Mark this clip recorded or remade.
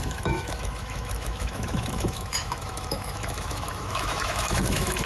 remade